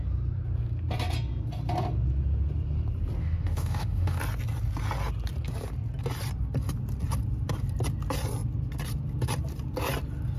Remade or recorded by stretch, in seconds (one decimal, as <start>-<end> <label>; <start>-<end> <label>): 0.0-3.2 recorded; 3.2-4.2 remade; 4.2-10.4 recorded